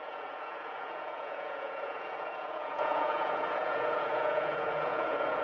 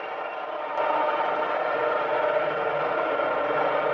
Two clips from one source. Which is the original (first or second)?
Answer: second